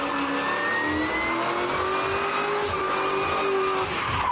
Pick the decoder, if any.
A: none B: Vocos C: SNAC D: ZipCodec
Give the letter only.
A